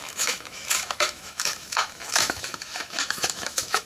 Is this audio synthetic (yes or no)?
yes